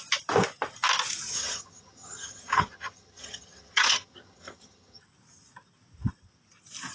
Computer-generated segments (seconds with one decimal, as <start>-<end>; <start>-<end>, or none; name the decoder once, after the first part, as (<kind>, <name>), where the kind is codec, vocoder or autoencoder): 1.3-5.0 (vocoder, HiFi-GAN)